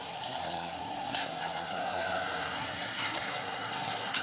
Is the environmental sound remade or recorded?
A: remade